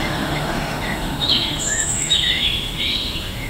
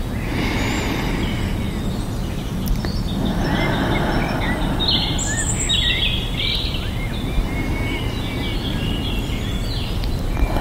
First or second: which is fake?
first